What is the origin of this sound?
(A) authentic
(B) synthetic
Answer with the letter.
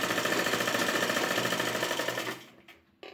A